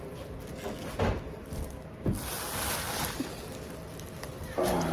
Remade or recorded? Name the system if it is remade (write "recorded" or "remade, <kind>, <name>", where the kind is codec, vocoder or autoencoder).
recorded